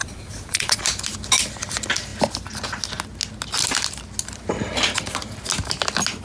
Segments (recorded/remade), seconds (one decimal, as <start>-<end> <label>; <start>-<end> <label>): 0.0-0.8 remade; 0.8-6.2 recorded